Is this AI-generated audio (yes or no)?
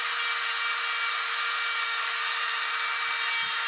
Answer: no